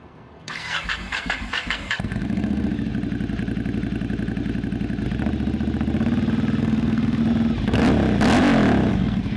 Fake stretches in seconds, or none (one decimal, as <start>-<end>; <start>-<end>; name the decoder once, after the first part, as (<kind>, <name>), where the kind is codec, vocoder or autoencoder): 0.0-2.7 (codec, SNAC); 6.6-7.2; 8.9-9.4